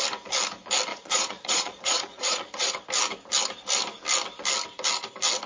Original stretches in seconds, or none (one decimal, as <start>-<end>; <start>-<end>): 0.0-0.9; 2.7-5.5